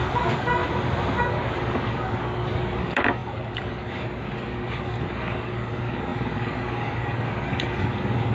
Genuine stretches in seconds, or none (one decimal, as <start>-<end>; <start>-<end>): 0.6-1.2